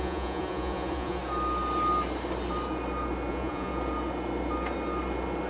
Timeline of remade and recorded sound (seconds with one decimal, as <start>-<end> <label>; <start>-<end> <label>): 0.0-1.2 remade; 1.2-3.3 recorded; 3.3-3.7 remade; 3.7-5.5 recorded